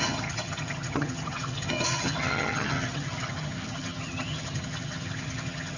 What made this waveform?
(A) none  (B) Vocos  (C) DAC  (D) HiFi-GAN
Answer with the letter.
D